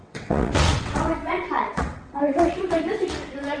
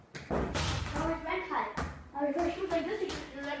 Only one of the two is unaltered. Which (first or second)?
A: second